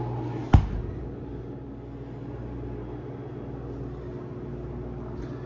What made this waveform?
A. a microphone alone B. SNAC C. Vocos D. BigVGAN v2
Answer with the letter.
A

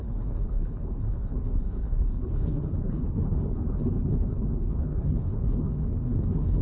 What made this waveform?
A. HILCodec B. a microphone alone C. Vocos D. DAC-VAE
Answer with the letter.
A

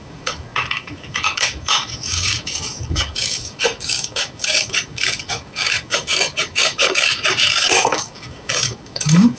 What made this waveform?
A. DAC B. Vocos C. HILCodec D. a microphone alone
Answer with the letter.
A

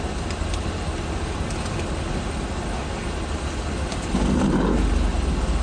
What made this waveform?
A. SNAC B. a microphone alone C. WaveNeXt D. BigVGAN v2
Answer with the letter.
B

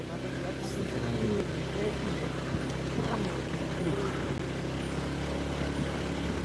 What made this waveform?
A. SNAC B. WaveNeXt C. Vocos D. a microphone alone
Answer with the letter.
D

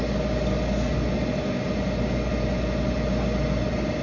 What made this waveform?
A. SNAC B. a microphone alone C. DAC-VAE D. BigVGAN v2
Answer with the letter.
B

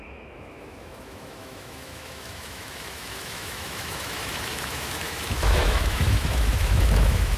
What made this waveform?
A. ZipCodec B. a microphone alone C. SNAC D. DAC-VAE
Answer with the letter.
D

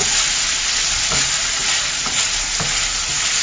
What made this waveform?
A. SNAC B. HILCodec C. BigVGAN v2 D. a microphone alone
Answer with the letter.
D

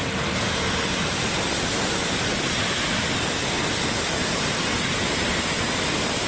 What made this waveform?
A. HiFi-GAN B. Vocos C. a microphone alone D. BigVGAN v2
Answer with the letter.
C